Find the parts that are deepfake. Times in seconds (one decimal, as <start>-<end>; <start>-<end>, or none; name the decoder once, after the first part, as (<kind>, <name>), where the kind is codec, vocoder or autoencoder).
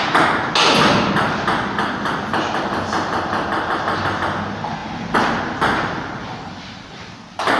none